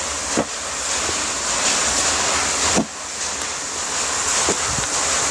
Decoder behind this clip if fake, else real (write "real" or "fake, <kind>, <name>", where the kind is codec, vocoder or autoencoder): real